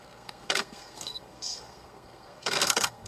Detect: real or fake fake